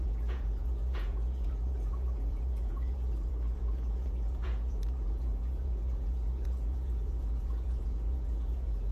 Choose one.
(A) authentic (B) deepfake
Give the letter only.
B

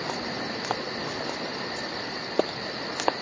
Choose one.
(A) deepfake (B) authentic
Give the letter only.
B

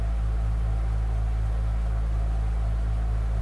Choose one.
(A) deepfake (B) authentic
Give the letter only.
B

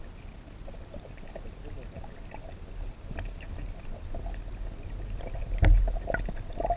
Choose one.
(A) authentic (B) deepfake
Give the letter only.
A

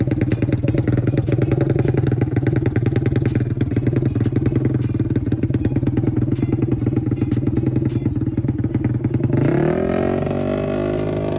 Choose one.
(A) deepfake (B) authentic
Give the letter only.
B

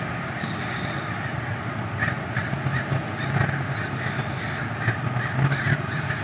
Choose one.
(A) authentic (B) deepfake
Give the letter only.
A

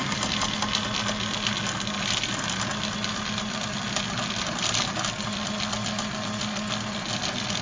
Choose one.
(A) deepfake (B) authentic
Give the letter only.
B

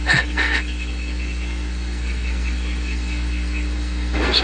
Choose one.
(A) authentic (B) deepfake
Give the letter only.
B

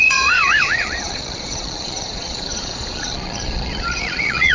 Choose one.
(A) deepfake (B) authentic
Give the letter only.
A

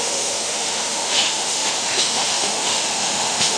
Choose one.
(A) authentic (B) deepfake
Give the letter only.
B